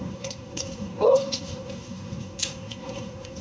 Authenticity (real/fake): fake